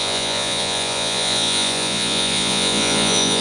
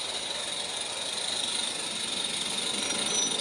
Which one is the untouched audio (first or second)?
second